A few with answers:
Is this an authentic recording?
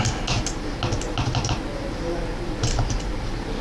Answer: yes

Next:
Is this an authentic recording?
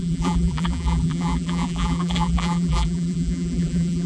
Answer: no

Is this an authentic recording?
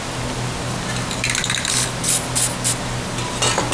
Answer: yes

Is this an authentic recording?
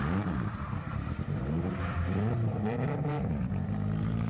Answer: no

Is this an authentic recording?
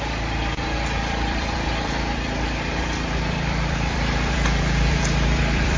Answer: no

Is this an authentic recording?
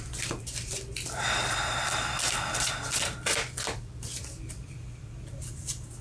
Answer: no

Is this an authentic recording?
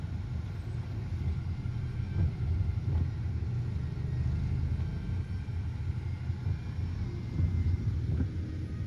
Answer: yes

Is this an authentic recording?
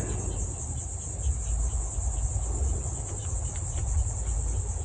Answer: yes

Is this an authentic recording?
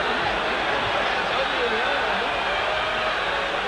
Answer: yes